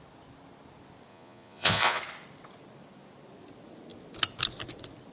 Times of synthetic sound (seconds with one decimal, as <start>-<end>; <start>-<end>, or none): 1.1-2.0